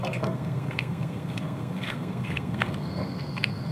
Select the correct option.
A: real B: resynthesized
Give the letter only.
B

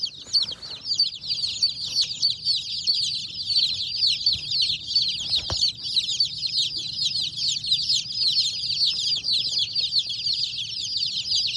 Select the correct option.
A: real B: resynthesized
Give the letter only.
A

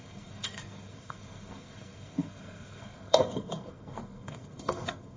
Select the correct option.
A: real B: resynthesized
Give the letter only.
B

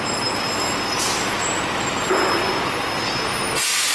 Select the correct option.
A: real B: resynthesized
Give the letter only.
A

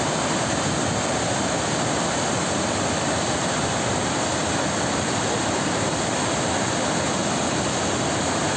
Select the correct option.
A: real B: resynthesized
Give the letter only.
A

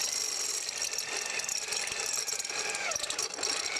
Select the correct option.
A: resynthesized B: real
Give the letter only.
B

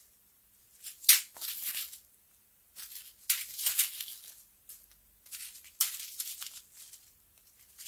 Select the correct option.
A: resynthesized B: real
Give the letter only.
B